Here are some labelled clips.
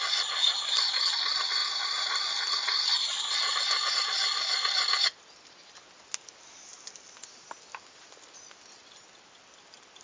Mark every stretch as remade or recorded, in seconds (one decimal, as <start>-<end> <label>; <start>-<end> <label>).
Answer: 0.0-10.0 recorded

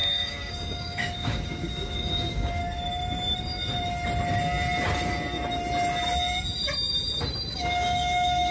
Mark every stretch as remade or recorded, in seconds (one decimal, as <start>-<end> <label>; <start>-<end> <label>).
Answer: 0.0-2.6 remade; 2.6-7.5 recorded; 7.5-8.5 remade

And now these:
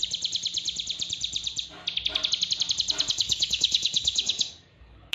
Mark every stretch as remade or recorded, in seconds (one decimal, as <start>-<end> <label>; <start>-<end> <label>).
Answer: 0.0-3.1 recorded; 3.1-5.1 remade

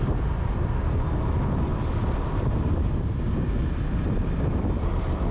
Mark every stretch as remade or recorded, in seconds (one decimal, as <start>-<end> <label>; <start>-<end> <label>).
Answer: 0.0-5.3 recorded

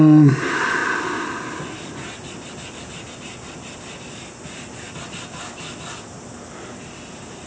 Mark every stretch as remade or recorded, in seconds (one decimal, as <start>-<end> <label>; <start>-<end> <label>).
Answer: 0.0-7.5 recorded

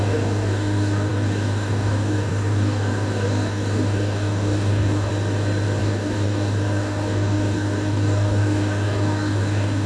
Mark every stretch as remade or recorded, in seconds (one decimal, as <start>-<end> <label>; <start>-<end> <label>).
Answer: 0.0-5.1 remade; 5.1-5.8 recorded; 5.8-9.9 remade